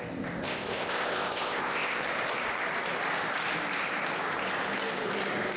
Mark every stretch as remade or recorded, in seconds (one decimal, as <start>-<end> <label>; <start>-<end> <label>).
0.0-0.4 recorded; 0.4-2.0 remade; 2.0-5.6 recorded